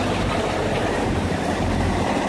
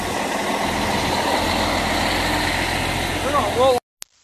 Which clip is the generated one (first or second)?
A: first